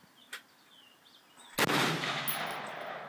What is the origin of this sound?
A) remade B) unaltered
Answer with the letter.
B